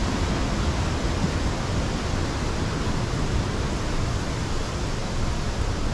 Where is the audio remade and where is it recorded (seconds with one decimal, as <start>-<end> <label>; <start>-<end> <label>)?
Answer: 0.0-5.9 recorded